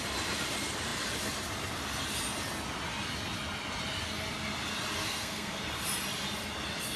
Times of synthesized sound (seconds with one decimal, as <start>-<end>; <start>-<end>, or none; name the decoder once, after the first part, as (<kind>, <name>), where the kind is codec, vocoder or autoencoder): 5.0-5.6 (codec, SNAC)